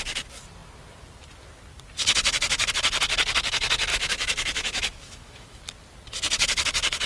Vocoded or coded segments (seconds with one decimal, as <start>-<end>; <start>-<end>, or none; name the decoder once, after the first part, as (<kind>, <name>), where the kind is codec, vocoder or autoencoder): 3.9-5.6 (autoencoder, DAC-VAE)